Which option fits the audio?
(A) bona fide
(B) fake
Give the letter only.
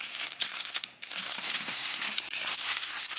B